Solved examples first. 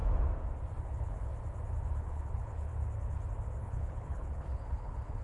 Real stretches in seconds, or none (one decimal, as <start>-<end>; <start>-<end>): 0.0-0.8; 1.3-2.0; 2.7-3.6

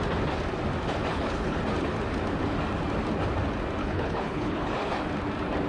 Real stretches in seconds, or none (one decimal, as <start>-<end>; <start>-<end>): 0.0-1.1; 1.6-3.8; 4.9-5.7

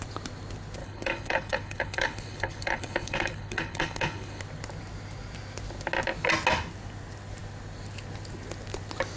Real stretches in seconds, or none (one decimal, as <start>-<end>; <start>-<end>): 0.0-0.8; 4.4-9.2

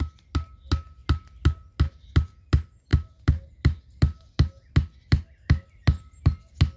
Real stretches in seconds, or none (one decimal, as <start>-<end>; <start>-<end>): 0.0-6.8